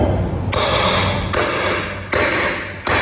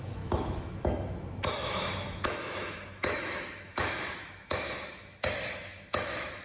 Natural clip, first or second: first